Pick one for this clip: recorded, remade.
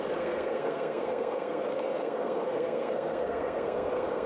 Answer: remade